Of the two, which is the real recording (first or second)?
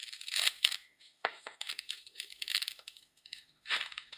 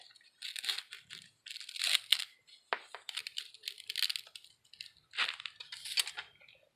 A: second